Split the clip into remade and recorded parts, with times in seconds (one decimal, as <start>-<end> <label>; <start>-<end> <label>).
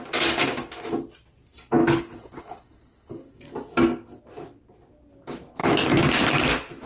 0.0-1.8 recorded; 1.8-3.3 remade; 3.3-6.9 recorded